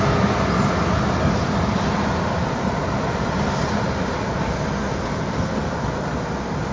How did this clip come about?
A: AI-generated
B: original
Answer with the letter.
B